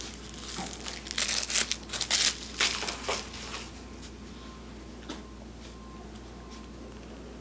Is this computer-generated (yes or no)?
no